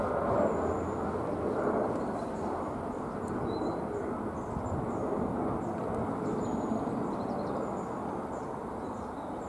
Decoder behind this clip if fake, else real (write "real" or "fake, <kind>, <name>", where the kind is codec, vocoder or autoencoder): real